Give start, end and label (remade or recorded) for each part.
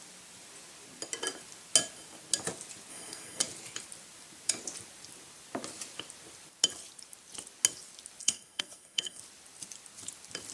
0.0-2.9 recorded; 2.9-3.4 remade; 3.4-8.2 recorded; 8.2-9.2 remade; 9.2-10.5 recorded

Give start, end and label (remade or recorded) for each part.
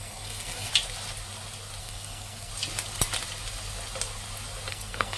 0.0-0.7 remade; 0.7-1.8 recorded; 1.8-2.5 remade; 2.5-4.7 recorded; 4.7-5.2 remade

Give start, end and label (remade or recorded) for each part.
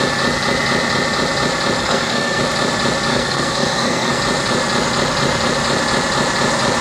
0.0-1.8 recorded; 1.8-2.4 remade; 2.4-3.1 recorded; 3.1-4.2 remade; 4.2-6.8 recorded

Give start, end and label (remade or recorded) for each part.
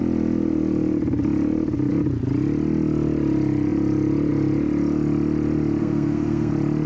0.0-5.8 recorded; 5.8-6.5 remade; 6.5-6.9 recorded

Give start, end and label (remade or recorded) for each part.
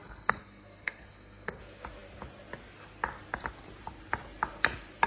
0.0-1.6 remade; 1.6-5.1 recorded